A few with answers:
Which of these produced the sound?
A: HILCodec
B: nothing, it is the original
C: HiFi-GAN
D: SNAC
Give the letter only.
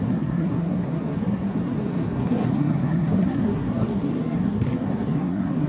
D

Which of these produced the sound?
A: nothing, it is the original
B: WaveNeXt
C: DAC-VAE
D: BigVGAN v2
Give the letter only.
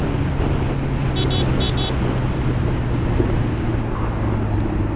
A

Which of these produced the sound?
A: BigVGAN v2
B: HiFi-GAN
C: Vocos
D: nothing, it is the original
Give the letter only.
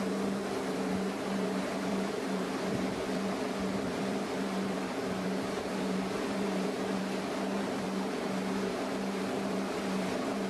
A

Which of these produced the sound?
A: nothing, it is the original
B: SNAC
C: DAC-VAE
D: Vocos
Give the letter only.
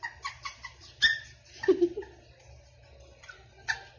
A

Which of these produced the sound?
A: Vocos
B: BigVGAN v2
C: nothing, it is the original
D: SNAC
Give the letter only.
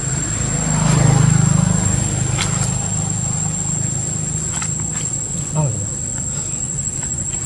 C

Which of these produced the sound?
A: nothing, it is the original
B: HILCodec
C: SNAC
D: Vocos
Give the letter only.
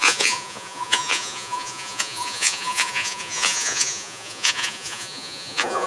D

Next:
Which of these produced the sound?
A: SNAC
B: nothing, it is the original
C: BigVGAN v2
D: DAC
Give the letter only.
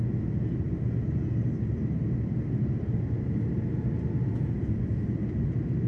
B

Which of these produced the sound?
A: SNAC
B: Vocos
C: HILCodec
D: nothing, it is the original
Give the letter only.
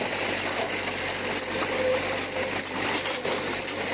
D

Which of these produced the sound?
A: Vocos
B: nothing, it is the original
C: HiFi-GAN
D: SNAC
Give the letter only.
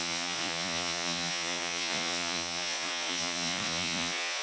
A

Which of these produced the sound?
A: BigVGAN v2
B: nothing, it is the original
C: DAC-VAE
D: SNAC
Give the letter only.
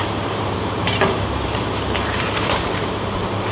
A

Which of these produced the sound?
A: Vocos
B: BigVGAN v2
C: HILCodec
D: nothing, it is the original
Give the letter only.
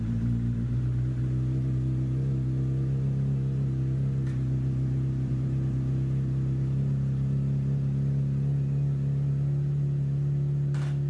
D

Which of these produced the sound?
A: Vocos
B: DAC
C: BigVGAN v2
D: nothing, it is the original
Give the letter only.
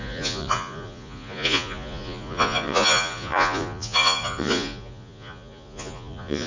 A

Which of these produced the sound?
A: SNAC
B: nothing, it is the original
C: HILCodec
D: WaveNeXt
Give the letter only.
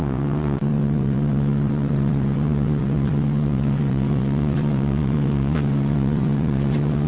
D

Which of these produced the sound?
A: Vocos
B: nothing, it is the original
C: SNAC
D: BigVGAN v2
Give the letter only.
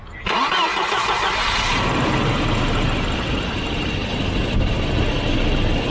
B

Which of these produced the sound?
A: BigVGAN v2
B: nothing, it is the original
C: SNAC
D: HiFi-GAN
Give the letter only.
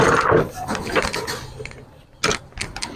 B